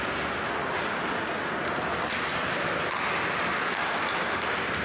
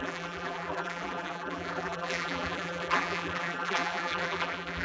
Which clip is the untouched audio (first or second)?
first